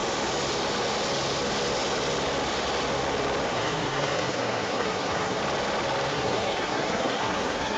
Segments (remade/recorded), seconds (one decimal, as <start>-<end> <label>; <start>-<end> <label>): 0.0-3.5 recorded; 3.5-5.4 remade; 5.4-6.1 recorded; 6.1-7.8 remade